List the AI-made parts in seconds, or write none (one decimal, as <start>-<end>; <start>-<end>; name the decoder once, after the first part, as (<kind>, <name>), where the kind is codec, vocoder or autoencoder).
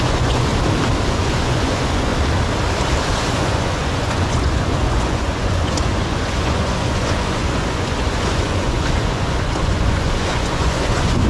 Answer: 0.0-0.5 (vocoder, Vocos); 1.1-2.1; 3.0-11.3